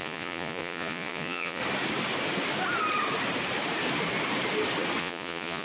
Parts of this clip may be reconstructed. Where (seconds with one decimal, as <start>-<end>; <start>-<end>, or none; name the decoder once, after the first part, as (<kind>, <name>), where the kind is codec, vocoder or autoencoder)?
0.0-1.6 (vocoder, Vocos); 5.0-5.6